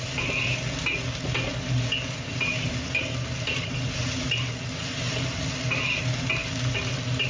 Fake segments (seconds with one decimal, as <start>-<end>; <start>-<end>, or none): none